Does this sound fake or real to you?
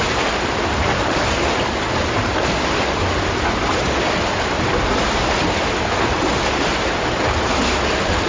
real